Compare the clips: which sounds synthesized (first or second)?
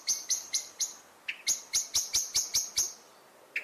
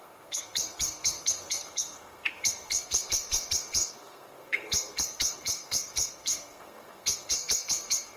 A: second